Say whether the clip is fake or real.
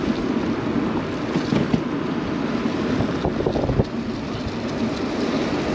real